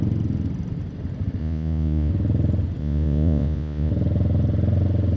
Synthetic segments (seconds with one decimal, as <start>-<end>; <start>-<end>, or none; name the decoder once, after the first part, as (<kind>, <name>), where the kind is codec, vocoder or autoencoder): 1.4-2.1 (vocoder, Vocos); 2.8-3.9